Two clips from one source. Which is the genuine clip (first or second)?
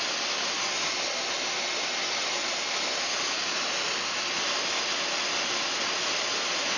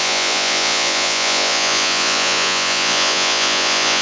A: first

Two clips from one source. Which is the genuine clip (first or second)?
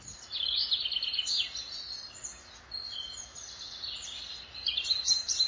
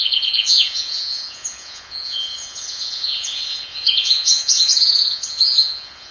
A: first